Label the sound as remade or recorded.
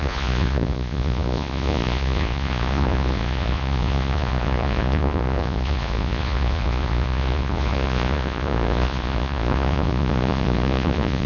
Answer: remade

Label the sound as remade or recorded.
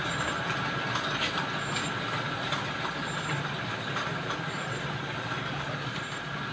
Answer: recorded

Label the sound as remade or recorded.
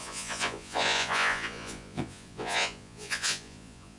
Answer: remade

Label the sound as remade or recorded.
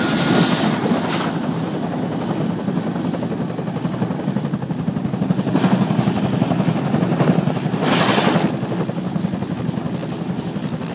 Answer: recorded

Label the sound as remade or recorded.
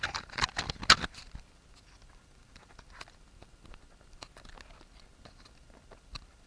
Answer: recorded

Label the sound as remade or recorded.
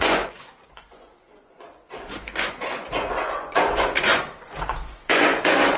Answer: remade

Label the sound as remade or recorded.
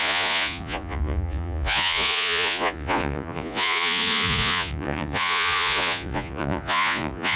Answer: remade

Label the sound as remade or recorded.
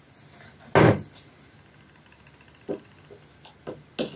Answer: recorded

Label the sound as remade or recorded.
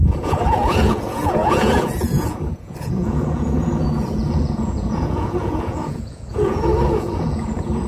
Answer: remade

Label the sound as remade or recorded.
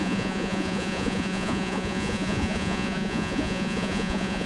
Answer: remade